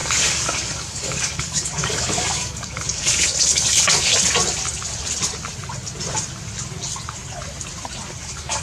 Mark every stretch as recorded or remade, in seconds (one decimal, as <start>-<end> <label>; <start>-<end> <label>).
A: 0.0-4.1 remade; 4.1-8.2 recorded; 8.2-8.6 remade